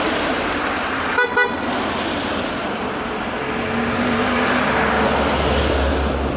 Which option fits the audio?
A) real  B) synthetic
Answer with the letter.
A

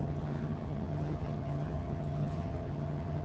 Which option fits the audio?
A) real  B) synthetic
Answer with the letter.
B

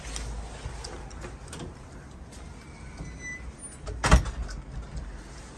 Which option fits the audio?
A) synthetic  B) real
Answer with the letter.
B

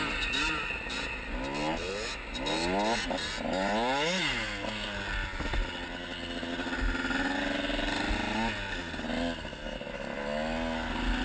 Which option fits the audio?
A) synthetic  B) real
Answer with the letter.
B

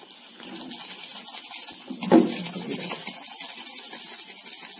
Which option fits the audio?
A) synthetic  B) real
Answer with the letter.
B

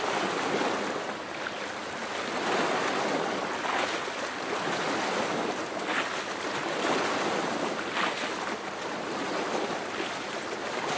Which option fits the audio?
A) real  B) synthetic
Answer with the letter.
A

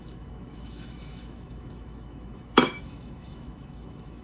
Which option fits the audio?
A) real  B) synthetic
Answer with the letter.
B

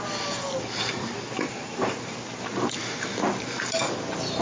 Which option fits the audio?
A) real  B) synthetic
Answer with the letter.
A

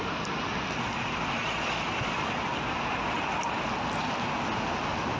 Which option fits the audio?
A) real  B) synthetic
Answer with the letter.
A